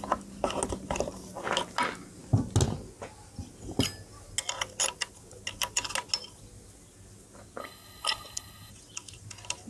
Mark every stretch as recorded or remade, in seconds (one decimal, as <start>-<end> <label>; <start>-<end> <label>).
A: 0.0-7.6 recorded; 7.6-8.7 remade; 8.7-9.7 recorded